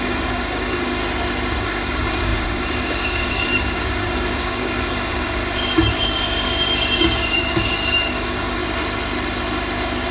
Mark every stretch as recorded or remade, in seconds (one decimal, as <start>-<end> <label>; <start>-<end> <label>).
0.0-1.0 remade; 1.0-1.6 recorded; 1.6-8.6 remade; 8.6-10.1 recorded

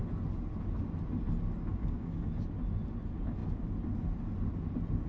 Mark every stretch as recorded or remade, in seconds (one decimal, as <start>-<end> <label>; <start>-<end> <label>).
0.0-1.7 recorded; 1.7-2.3 remade; 2.3-5.1 recorded

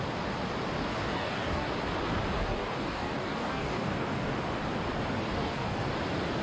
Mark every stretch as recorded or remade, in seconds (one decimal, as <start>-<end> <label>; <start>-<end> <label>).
0.0-0.9 recorded; 0.9-1.7 remade; 1.7-2.5 recorded; 2.5-4.3 remade; 4.3-5.3 recorded; 5.3-5.9 remade; 5.9-6.4 recorded

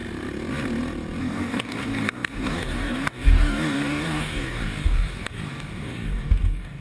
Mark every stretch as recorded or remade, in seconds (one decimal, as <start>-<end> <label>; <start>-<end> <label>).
0.0-1.2 recorded; 1.2-6.8 remade

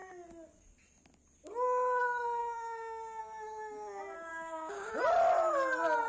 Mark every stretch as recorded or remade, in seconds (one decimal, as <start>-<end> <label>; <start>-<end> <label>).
0.0-2.4 recorded; 2.4-3.2 remade; 3.2-4.3 recorded; 4.3-4.9 remade; 4.9-6.1 recorded

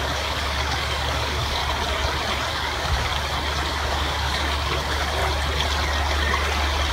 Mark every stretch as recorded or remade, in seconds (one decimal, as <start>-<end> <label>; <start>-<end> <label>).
0.0-1.6 remade; 1.6-2.5 recorded; 2.5-3.1 remade; 3.1-3.7 recorded; 3.7-5.2 remade; 5.2-6.9 recorded

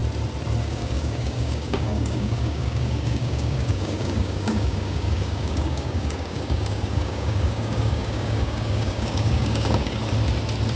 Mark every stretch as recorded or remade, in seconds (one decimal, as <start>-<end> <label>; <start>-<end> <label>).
0.0-0.6 recorded; 0.6-10.0 remade; 10.0-10.8 recorded

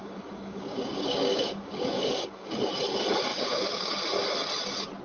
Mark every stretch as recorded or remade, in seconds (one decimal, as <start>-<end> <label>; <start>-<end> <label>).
0.0-2.5 remade; 2.5-3.3 recorded; 3.3-3.9 remade; 3.9-5.0 recorded